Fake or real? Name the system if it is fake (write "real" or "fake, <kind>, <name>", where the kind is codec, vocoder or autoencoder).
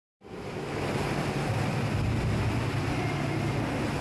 real